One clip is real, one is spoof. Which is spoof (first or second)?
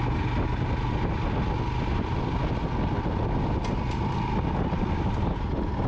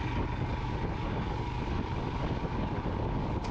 second